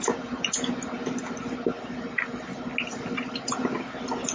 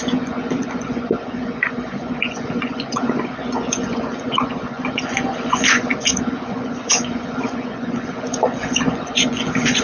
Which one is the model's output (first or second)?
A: second